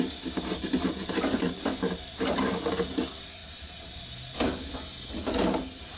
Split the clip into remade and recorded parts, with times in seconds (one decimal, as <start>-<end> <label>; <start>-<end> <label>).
0.0-6.0 recorded